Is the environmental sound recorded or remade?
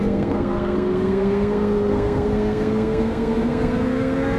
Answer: remade